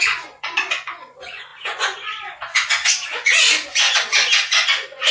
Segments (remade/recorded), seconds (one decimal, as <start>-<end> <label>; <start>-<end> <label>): 0.0-5.1 remade